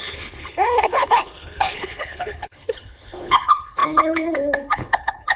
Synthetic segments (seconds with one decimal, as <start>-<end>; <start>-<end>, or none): 0.0-5.4